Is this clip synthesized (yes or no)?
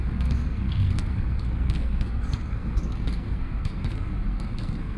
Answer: yes